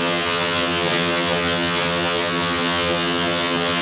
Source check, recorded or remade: remade